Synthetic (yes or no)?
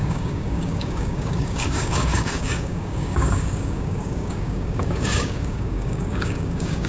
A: yes